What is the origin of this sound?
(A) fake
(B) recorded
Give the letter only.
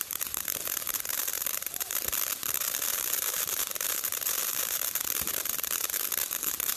A